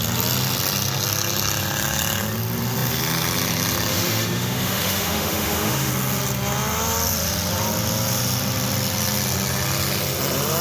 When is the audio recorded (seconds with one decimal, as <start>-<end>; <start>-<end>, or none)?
0.0-3.9; 5.9-10.6